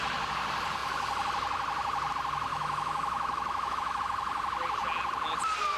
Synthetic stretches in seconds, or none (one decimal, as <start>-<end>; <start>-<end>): 2.5-4.0